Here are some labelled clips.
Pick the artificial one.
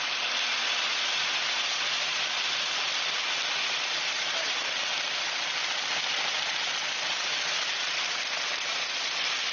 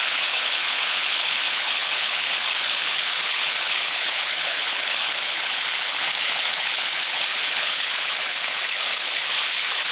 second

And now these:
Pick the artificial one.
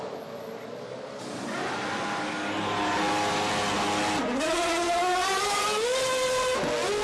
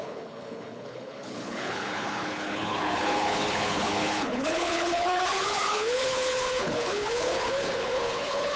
second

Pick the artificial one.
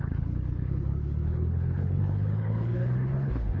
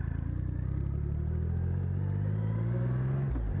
first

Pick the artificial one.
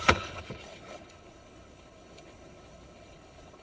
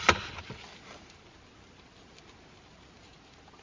first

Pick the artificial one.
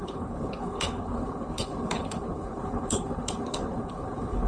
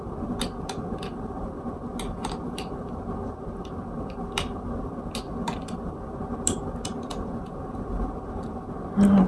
first